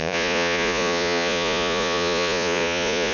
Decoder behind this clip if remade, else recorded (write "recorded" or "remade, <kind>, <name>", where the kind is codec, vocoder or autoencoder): remade, vocoder, Vocos